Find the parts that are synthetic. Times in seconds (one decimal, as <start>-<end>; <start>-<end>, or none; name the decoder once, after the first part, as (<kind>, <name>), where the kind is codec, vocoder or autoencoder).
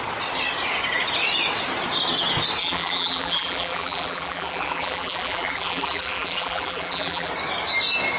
2.6-7.3 (vocoder, BigVGAN v2)